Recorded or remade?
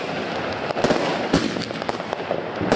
recorded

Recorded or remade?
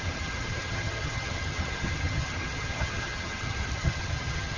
remade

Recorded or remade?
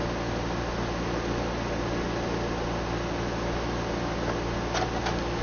recorded